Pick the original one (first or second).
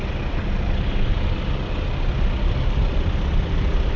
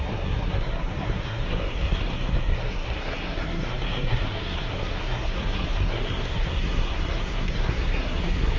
first